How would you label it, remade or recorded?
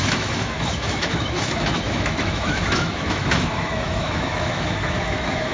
remade